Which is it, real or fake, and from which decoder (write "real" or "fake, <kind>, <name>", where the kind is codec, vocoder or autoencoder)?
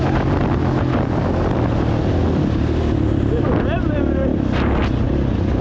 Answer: real